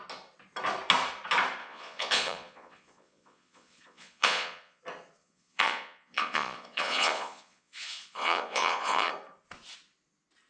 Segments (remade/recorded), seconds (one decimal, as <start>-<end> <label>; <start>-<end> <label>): 0.0-1.6 recorded; 1.6-4.8 remade; 4.8-5.2 recorded; 5.2-9.1 remade; 9.1-10.5 recorded